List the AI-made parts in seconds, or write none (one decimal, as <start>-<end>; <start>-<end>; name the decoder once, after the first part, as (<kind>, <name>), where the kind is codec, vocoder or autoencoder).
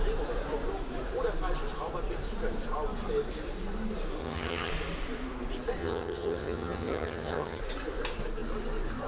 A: 4.2-4.7 (vocoder, HiFi-GAN); 5.8-7.6